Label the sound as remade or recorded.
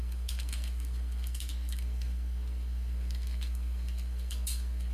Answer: remade